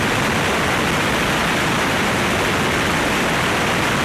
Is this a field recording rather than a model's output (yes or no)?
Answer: yes